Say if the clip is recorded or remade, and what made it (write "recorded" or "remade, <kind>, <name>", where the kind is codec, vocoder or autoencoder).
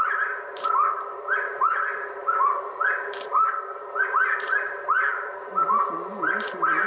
remade, vocoder, BigVGAN v2